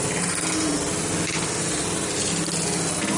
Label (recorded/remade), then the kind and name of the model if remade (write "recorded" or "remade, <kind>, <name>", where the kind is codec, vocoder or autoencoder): recorded